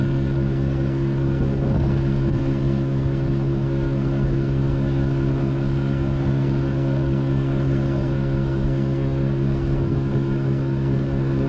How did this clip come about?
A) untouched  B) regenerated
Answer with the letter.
B